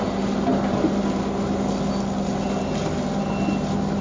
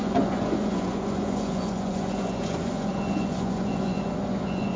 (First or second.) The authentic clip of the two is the first